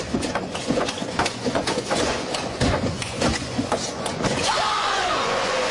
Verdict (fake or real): fake